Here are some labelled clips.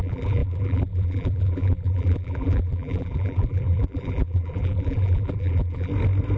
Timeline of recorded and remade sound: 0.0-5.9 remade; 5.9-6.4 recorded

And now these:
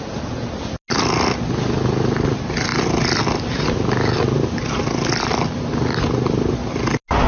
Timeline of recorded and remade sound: 0.0-7.3 recorded